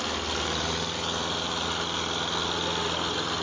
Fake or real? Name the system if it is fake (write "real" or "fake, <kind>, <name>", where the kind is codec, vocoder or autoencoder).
real